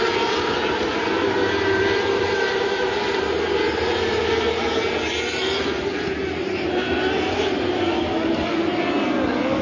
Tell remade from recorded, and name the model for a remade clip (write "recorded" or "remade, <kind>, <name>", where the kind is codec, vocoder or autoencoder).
remade, vocoder, BigVGAN v2